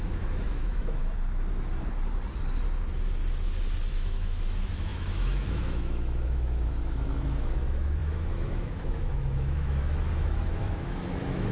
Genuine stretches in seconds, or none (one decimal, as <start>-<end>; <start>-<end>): 1.0-3.9